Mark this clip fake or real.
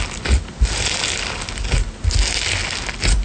real